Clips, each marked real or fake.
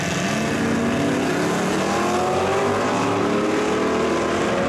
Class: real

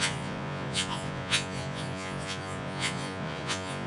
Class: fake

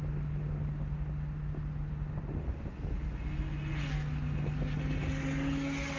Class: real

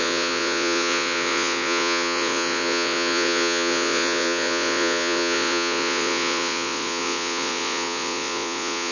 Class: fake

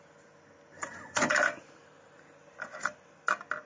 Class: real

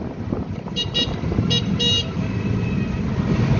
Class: real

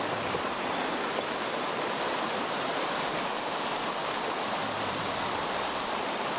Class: real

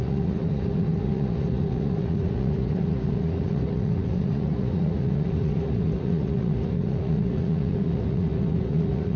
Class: fake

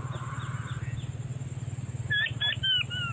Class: real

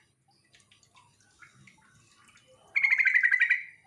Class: real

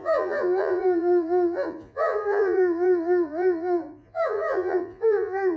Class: fake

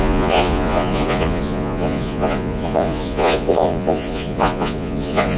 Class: fake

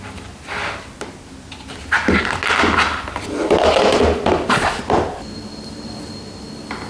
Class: real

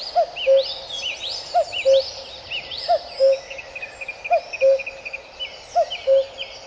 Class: real